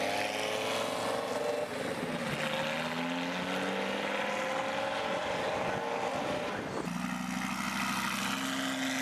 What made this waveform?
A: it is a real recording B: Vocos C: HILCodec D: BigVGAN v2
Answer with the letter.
A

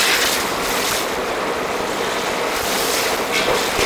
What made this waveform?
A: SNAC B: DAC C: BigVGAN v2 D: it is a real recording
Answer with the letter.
D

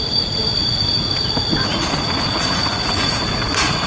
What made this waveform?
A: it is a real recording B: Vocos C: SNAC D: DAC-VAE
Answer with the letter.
B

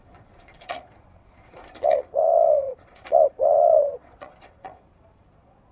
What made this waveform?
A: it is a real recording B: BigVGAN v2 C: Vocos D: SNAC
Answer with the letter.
C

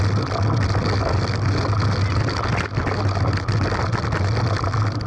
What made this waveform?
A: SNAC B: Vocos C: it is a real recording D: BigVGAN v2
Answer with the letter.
C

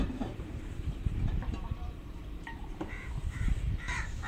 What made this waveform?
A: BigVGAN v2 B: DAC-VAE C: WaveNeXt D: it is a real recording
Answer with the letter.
A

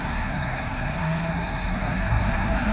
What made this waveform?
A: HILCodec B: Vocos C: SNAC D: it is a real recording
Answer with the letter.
C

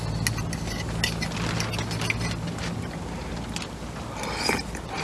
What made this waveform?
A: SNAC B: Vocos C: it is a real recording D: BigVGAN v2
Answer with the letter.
C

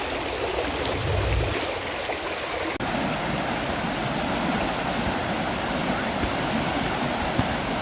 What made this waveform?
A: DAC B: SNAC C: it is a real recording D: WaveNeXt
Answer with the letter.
C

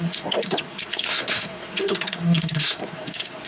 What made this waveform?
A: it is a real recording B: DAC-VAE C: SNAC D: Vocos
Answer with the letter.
C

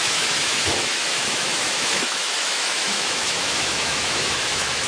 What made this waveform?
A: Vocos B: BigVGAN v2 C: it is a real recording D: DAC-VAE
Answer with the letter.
D